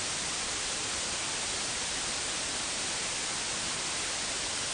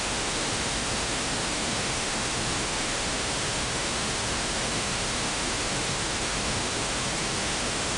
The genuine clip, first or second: first